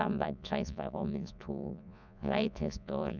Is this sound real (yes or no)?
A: no